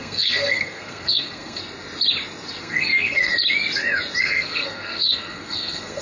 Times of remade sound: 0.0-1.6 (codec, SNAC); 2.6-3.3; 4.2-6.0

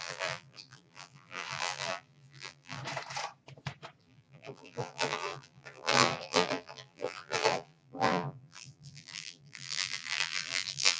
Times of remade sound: 0.0-2.8 (vocoder, BigVGAN v2); 4.0-11.0

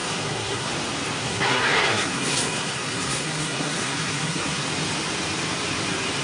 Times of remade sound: 0.0-0.7 (codec, SNAC); 1.2-4.7

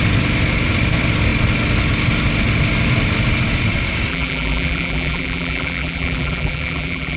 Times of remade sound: 4.1-7.2 (vocoder, BigVGAN v2)

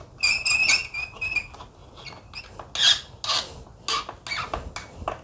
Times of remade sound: none

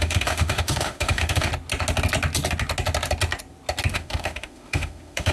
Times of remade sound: 0.0-1.5 (autoencoder, DAC-VAE); 3.9-5.3